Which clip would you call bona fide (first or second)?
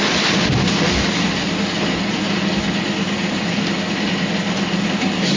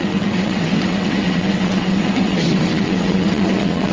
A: first